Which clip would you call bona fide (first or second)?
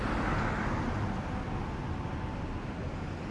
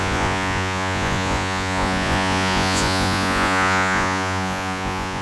first